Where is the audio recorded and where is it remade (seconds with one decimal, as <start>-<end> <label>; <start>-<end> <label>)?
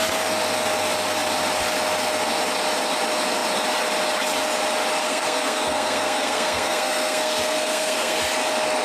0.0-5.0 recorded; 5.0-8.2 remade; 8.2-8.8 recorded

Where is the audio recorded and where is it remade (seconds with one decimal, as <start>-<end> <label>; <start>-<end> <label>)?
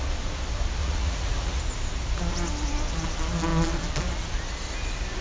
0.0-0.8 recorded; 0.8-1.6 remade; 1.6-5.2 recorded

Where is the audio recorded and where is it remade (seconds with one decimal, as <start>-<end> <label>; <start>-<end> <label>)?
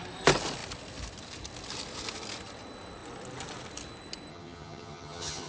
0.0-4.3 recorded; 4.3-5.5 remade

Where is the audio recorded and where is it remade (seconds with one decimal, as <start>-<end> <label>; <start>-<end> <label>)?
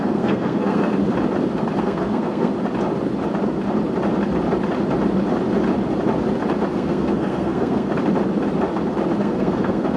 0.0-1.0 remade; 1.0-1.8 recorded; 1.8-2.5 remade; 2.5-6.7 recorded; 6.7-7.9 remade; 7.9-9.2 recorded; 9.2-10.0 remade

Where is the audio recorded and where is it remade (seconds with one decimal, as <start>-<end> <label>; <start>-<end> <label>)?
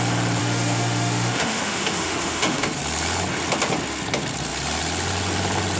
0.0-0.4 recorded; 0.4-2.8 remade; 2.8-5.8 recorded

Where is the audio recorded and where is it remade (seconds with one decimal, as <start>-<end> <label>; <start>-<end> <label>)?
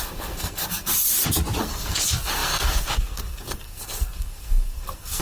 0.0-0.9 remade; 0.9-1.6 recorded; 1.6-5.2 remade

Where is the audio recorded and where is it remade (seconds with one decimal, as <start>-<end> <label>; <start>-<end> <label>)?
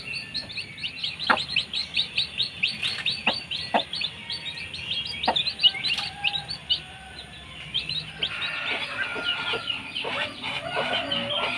0.0-1.8 recorded; 1.8-3.1 remade; 3.1-5.6 recorded; 5.6-6.3 remade; 6.3-9.1 recorded; 9.1-11.1 remade; 11.1-11.6 recorded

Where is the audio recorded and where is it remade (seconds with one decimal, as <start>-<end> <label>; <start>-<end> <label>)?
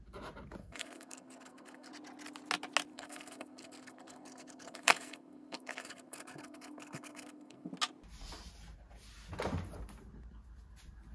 0.0-0.6 recorded; 0.6-1.9 remade; 1.9-2.9 recorded; 2.9-7.7 remade; 7.7-11.1 recorded